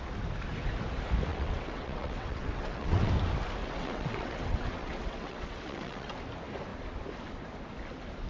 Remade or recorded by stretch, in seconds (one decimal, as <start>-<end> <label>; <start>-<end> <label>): 0.0-1.3 recorded; 1.3-3.1 remade; 3.1-3.6 recorded; 3.6-6.1 remade; 6.1-8.3 recorded